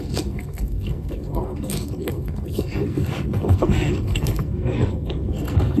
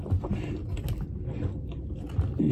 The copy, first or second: first